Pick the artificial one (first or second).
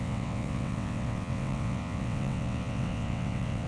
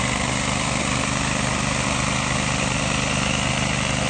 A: first